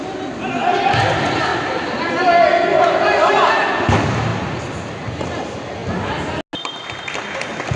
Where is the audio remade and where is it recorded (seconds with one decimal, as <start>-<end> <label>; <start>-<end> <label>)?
0.0-7.8 recorded